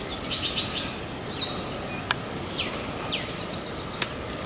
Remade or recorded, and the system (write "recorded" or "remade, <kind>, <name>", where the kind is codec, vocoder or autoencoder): recorded